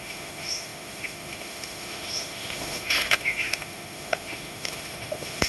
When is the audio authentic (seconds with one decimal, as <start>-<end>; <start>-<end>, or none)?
none